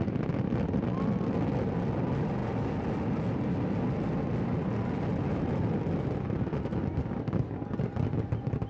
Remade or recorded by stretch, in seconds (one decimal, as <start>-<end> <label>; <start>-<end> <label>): 0.0-8.7 recorded